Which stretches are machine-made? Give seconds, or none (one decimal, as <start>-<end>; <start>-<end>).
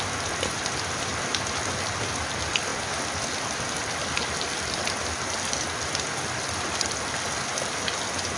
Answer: 1.1-2.1; 2.7-6.6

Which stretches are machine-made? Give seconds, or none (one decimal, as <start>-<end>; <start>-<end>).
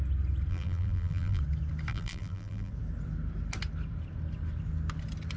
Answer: 0.5-1.4; 1.9-2.7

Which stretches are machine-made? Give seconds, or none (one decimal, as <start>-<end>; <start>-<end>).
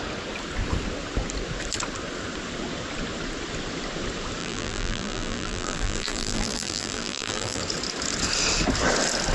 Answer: 4.4-7.6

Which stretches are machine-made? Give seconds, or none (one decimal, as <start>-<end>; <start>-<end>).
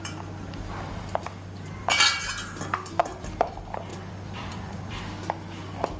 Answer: 3.0-3.5; 3.9-5.0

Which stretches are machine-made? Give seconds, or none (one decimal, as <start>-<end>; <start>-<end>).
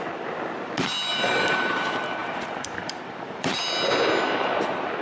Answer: 1.1-1.8; 2.2-3.6